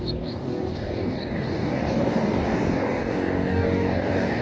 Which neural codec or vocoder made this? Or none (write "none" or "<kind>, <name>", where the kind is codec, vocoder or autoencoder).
codec, DAC